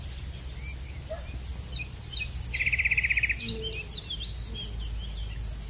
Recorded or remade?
recorded